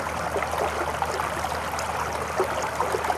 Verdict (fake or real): real